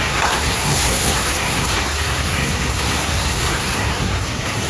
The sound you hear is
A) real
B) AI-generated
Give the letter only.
B